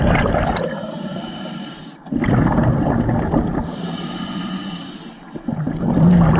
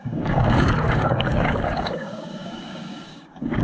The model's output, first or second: second